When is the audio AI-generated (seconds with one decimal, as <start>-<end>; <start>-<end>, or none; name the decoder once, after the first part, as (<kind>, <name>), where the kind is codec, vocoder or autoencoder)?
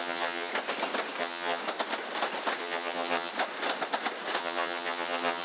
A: 0.0-0.5 (vocoder, HiFi-GAN); 1.2-1.6; 2.6-3.3; 4.4-5.4